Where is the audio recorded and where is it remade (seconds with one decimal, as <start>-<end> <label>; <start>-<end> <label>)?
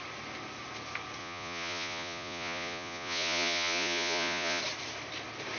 0.0-1.2 recorded; 1.2-4.6 remade; 4.6-5.6 recorded